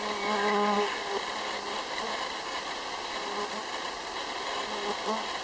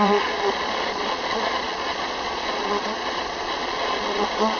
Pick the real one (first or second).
first